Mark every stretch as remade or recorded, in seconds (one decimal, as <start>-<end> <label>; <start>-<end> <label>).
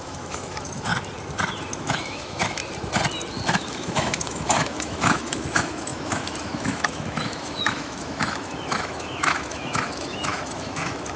0.0-0.9 remade; 0.9-1.8 recorded; 1.8-2.6 remade; 2.6-3.5 recorded; 3.5-11.2 remade